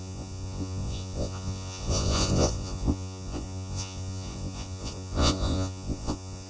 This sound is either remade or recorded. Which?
remade